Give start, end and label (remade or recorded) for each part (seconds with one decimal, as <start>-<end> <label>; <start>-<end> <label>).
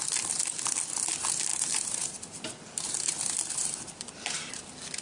0.0-1.5 recorded; 1.5-4.5 remade; 4.5-5.0 recorded